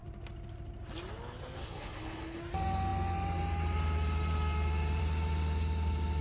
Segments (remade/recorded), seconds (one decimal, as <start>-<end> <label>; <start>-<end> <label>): 0.0-1.6 recorded; 1.6-2.4 remade; 2.4-6.2 recorded